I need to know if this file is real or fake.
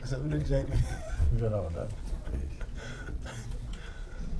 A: fake